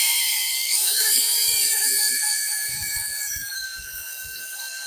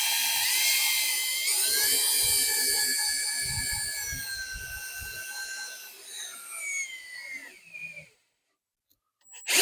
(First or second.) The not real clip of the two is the first